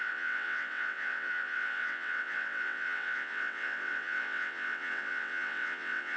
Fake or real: fake